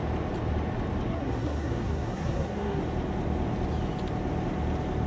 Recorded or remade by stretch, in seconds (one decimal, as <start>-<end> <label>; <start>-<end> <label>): 0.0-1.1 recorded; 1.1-2.8 remade; 2.8-5.1 recorded